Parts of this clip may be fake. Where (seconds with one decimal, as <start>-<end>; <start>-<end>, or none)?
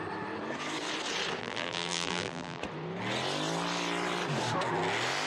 1.4-2.6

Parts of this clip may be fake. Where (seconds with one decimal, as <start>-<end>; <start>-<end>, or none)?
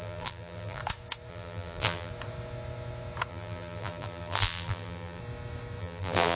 0.0-0.8; 1.3-2.1; 3.3-5.2; 5.8-6.4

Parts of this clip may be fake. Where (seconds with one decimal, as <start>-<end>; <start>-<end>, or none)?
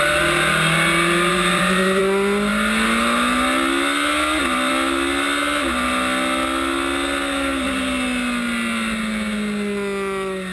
1.3-2.0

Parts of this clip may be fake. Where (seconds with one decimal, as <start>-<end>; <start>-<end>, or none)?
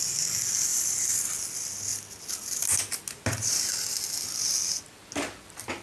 0.7-1.2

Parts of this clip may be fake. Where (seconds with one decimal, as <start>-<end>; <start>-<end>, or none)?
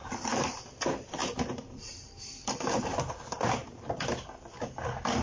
0.0-0.6; 1.2-3.9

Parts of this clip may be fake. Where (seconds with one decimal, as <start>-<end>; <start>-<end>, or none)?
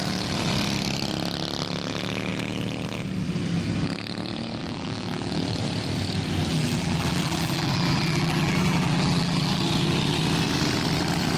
4.6-5.6; 6.5-9.6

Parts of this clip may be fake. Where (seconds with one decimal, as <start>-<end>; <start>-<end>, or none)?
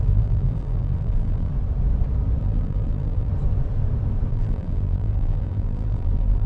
0.0-1.5; 2.4-3.3; 4.3-6.5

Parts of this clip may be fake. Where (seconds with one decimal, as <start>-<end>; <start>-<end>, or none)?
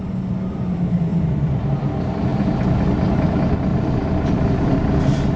1.1-1.9; 3.7-5.0